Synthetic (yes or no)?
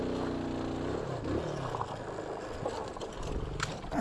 no